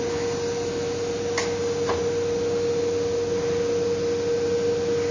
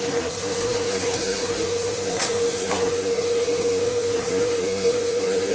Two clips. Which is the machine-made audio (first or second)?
second